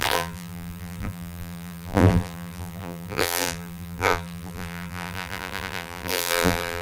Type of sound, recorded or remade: remade